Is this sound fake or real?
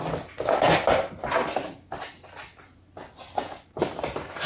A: real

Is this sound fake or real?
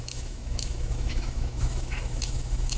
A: fake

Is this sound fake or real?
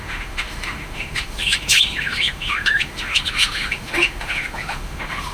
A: fake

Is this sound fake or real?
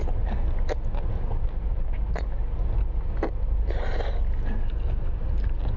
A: real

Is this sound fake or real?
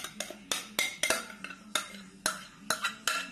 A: real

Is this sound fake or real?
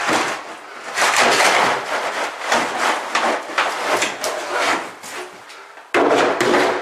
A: real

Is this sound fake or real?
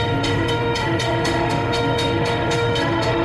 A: fake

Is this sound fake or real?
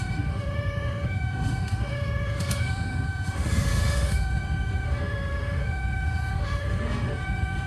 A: fake